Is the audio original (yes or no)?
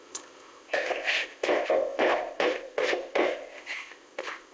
no